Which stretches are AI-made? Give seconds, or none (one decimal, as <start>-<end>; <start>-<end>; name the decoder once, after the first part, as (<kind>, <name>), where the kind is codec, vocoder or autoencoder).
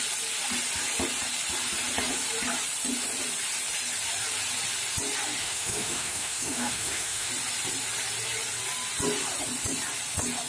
5.4-7.3 (autoencoder, DAC-VAE)